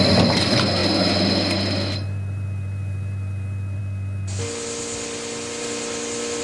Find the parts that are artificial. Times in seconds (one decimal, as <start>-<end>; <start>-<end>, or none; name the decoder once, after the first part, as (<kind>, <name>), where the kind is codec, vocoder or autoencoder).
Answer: none